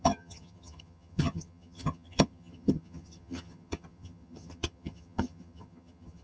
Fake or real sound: fake